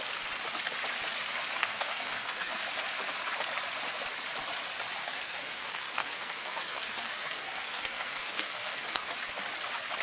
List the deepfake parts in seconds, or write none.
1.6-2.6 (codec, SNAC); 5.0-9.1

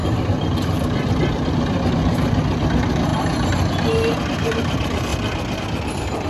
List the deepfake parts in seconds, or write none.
0.0-5.1 (vocoder, BigVGAN v2); 5.6-6.3